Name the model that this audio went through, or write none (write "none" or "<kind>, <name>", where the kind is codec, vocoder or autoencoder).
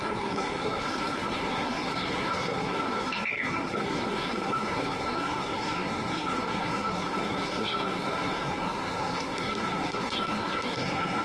codec, SNAC